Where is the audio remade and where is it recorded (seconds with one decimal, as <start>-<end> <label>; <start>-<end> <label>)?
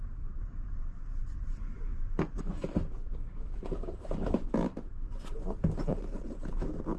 0.0-7.0 remade